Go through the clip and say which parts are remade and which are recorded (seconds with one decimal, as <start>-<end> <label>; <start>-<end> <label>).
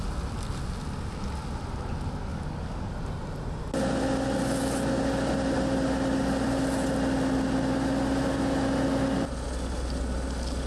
0.0-2.3 recorded; 2.3-2.9 remade; 2.9-10.7 recorded